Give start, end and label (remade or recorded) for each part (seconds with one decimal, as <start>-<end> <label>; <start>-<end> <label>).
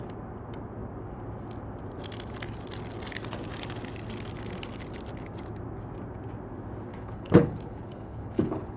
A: 0.0-6.9 recorded; 6.9-8.8 remade